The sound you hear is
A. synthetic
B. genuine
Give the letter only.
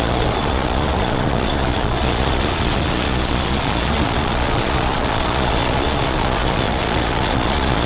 A